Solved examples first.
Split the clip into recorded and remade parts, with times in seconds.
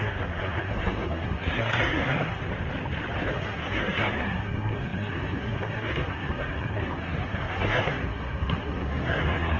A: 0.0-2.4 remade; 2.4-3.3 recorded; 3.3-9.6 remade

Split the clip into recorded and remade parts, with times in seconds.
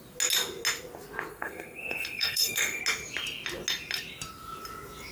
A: 0.0-1.3 recorded; 1.3-2.8 remade; 2.8-5.1 recorded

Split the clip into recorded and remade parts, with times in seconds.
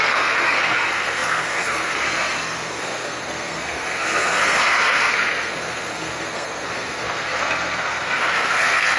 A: 0.0-9.0 remade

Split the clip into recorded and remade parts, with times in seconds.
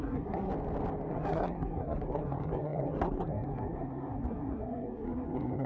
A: 0.0-0.5 remade; 0.5-1.1 recorded; 1.1-5.7 remade